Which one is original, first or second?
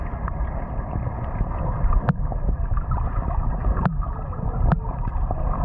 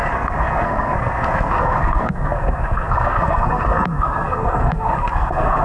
first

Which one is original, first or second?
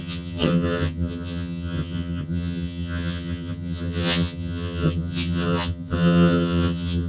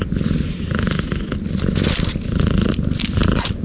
second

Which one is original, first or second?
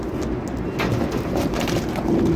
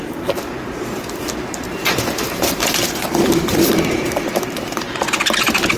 first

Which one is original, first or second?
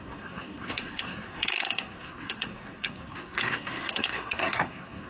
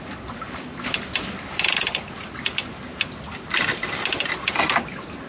second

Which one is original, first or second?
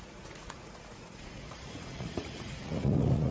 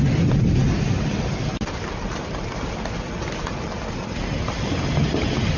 second